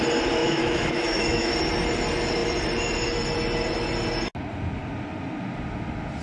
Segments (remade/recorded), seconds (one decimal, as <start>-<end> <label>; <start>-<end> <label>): 0.0-0.4 recorded; 0.4-1.5 remade; 1.5-6.2 recorded